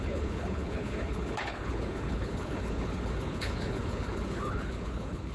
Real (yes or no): no